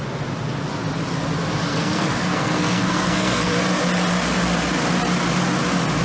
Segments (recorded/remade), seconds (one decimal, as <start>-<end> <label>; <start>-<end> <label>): 0.0-1.7 recorded; 1.7-3.5 remade; 3.5-6.0 recorded